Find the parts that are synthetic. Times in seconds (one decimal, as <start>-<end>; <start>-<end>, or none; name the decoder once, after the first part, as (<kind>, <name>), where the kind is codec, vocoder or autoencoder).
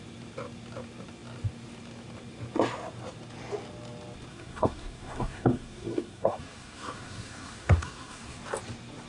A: 4.3-8.4 (codec, SNAC)